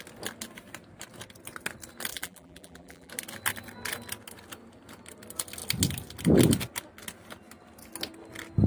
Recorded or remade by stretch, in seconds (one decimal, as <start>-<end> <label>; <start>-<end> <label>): 0.0-2.1 recorded; 2.1-3.1 remade; 3.1-8.7 recorded

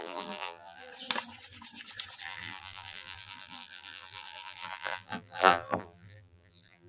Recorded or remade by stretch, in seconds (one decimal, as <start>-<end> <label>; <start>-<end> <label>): 0.0-0.9 remade; 0.9-2.2 recorded; 2.2-6.9 remade

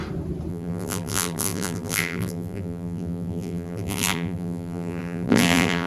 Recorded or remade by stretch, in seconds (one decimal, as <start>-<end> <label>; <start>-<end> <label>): 0.0-0.5 recorded; 0.5-5.9 remade

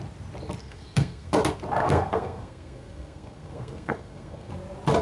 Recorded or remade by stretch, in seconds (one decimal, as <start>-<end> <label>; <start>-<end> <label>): 0.0-0.6 recorded; 0.6-1.3 remade; 1.3-1.8 recorded; 1.8-4.5 remade; 4.5-5.0 recorded